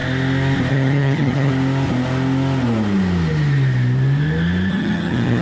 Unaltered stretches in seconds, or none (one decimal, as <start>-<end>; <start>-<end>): 0.0-0.7; 1.5-4.7